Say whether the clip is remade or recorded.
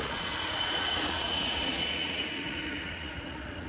remade